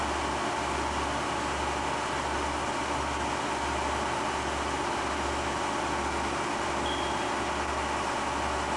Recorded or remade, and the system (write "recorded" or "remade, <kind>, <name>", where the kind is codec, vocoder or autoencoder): recorded